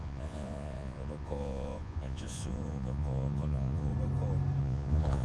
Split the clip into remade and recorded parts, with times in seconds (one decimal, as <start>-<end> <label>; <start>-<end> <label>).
0.0-3.9 remade; 3.9-4.6 recorded; 4.6-5.2 remade

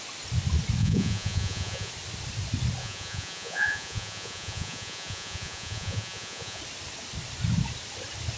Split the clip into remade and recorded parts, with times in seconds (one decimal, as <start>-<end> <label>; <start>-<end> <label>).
0.0-0.8 recorded; 0.8-1.9 remade; 1.9-2.8 recorded; 2.8-6.6 remade; 6.6-8.4 recorded

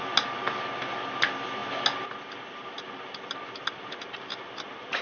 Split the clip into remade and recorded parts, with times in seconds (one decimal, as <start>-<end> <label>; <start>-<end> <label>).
0.0-5.0 recorded

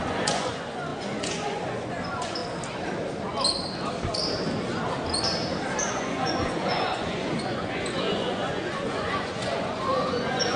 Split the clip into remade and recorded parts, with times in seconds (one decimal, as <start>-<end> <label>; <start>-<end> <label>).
0.0-2.4 remade; 2.4-5.9 recorded; 5.9-10.6 remade

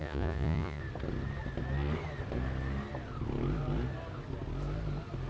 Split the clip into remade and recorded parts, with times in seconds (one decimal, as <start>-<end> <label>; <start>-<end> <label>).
0.0-0.8 remade; 0.8-5.3 recorded